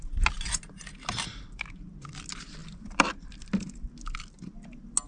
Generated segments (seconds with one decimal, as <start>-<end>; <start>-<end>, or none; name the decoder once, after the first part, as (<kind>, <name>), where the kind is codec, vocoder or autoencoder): 2.6-3.9 (vocoder, BigVGAN v2)